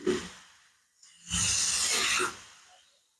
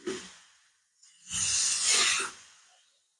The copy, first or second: second